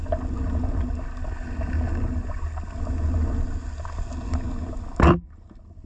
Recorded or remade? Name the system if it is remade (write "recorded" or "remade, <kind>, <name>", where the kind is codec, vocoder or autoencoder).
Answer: recorded